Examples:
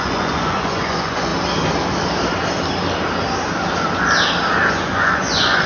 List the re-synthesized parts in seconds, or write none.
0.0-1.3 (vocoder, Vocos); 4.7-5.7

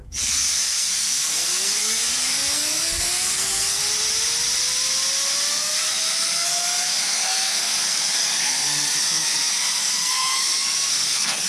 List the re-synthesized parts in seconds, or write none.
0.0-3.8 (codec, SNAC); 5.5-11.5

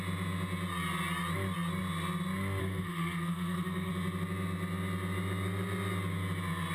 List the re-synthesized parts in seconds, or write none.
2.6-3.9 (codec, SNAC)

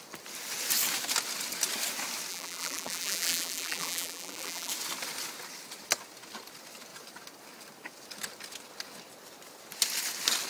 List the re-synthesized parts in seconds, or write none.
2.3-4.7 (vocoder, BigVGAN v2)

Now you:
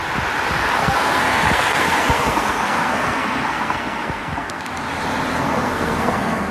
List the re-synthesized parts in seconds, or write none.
0.8-4.7 (codec, SNAC); 5.3-6.5

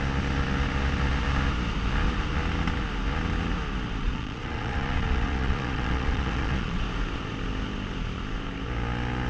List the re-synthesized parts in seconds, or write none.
4.0-6.8 (vocoder, Vocos)

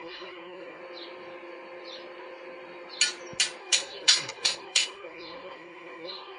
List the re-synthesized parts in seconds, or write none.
0.0-0.8 (codec, SNAC); 3.6-6.4

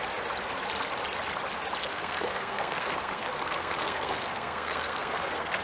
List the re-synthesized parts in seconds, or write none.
1.8-5.6 (codec, SNAC)